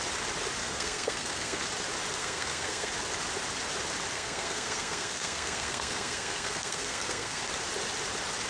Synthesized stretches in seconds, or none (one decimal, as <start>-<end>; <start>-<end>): 0.6-1.6; 2.2-2.9; 4.1-7.4